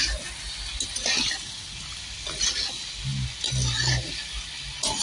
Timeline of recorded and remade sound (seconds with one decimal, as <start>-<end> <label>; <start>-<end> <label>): 0.0-5.0 recorded